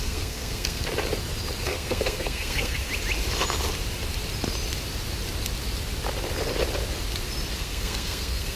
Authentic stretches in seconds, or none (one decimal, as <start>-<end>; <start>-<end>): 0.8-1.6; 2.9-7.6